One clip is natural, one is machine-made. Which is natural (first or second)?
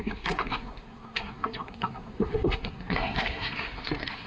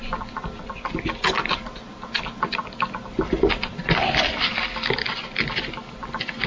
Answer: second